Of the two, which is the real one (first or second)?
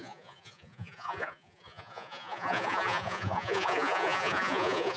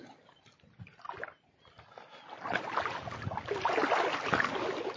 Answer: second